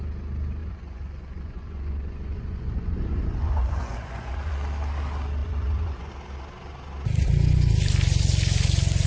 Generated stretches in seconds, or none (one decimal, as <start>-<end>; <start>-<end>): 0.6-4.5; 5.4-6.1